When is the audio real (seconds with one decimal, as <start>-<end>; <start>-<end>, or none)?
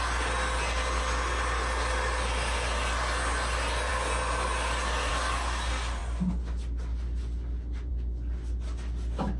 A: 0.0-9.4